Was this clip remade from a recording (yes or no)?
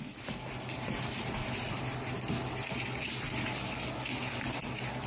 no